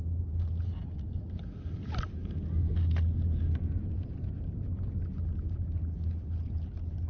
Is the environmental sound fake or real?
real